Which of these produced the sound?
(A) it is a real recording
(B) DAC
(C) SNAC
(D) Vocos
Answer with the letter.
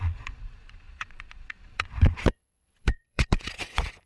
D